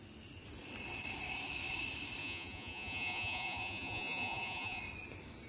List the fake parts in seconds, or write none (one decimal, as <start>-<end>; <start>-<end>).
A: 2.2-4.8